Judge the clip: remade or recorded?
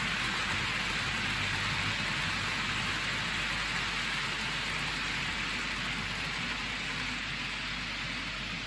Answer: recorded